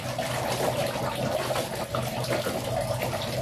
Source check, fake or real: real